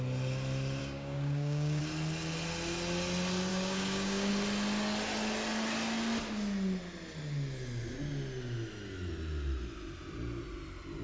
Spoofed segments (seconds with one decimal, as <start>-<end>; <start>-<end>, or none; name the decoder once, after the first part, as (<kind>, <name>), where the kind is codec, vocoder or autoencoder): 0.8-1.8 (codec, DAC); 3.5-4.3